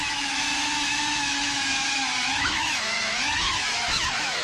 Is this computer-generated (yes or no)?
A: yes